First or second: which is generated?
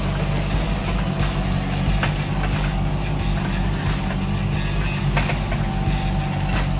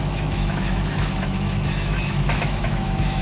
second